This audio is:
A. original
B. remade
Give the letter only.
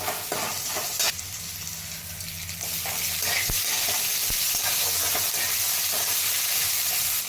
A